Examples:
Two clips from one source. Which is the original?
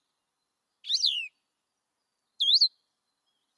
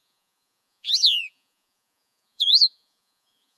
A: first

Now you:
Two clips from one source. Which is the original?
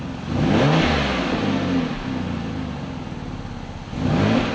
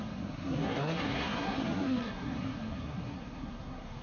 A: first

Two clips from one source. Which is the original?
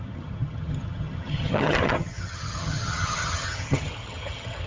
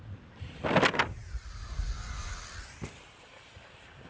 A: second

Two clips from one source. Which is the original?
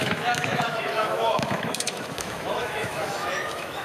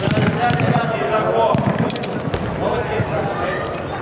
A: second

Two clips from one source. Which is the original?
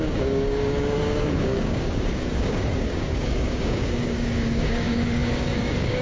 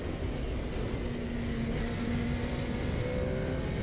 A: second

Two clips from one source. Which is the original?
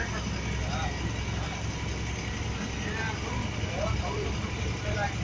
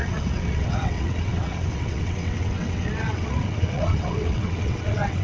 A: first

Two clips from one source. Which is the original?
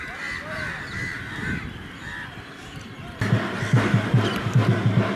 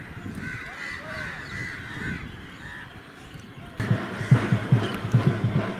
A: first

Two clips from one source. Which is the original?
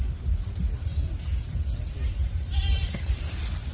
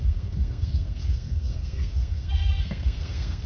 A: first